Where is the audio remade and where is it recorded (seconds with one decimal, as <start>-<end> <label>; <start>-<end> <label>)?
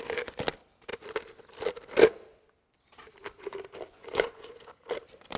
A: 0.0-3.9 recorded; 3.9-4.6 remade; 4.6-5.4 recorded